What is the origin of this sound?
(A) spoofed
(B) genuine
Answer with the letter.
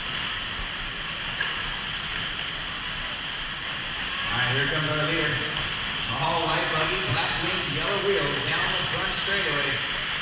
B